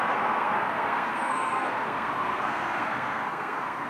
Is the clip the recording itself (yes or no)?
no